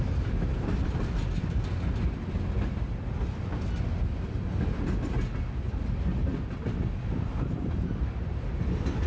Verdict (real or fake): real